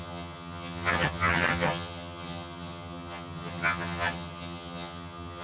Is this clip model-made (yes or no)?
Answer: yes